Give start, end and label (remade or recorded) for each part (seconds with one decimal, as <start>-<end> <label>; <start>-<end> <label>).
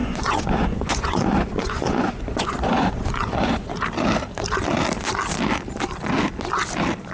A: 0.0-3.7 remade; 3.7-7.1 recorded